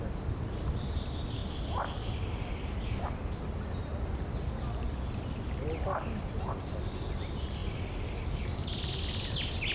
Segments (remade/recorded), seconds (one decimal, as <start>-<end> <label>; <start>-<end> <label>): 0.0-9.7 recorded